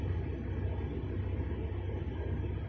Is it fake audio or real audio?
real